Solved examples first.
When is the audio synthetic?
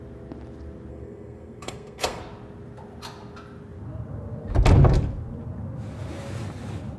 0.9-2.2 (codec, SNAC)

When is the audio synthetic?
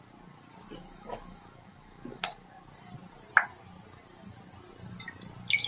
0.8-2.2 (autoencoder, DAC-VAE)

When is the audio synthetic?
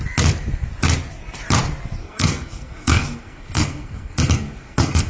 2.0-5.1 (codec, SNAC)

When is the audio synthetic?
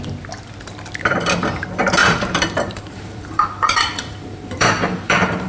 2.0-5.5 (vocoder, BigVGAN v2)